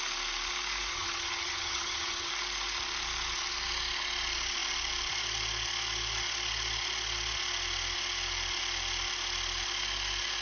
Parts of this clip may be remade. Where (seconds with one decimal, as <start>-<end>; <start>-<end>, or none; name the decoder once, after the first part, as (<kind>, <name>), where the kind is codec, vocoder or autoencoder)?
0.9-2.3 (vocoder, HiFi-GAN)